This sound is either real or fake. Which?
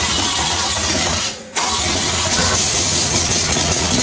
fake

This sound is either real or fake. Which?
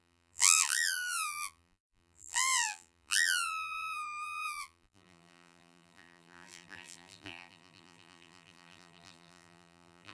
fake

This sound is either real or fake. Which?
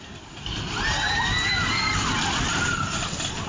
real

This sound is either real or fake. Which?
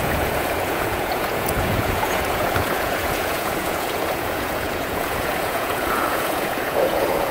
fake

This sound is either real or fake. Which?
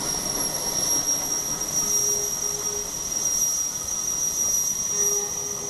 real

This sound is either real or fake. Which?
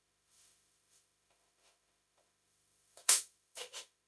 fake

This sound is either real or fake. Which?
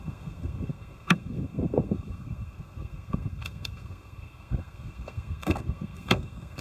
fake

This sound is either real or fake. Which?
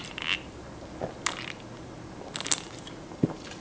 real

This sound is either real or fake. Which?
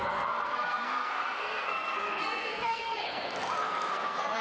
fake